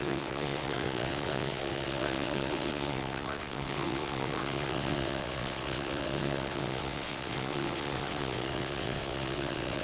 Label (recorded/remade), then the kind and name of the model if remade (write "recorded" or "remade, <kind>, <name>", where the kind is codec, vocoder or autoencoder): remade, vocoder, WaveNeXt